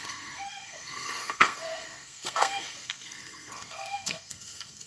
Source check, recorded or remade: remade